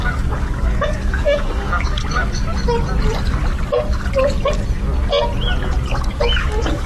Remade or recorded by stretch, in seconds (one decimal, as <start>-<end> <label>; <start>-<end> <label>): 0.0-2.5 remade; 2.5-6.1 recorded; 6.1-6.9 remade